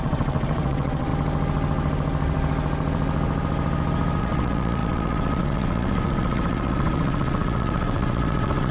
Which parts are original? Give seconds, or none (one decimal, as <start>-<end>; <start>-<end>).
1.1-4.2